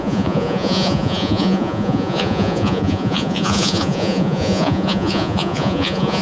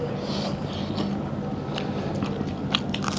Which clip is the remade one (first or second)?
first